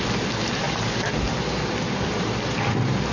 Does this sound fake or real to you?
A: real